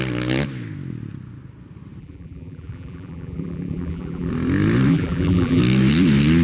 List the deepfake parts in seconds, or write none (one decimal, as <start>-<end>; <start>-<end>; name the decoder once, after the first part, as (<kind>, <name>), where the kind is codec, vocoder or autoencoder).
2.0-4.3 (vocoder, BigVGAN v2); 4.9-5.6